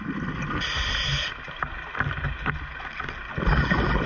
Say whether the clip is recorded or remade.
recorded